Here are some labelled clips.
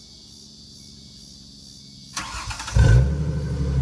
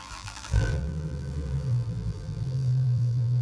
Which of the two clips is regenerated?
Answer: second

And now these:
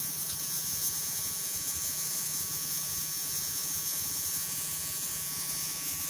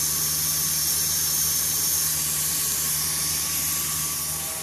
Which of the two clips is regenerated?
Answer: first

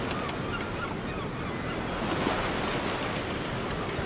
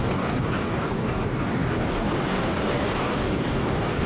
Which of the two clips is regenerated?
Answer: second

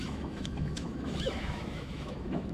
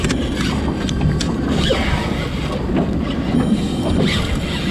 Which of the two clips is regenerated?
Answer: first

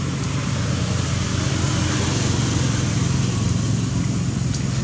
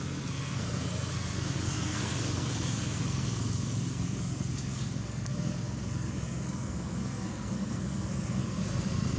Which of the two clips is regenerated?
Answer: second